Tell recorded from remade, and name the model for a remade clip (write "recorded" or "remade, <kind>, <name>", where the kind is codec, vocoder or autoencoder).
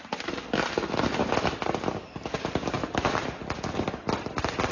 recorded